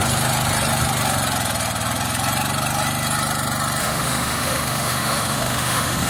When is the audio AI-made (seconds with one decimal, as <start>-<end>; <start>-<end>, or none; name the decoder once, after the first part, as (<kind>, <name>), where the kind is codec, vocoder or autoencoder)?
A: 3.8-6.1 (autoencoder, DAC-VAE)